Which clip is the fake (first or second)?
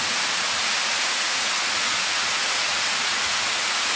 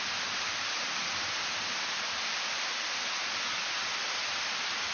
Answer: first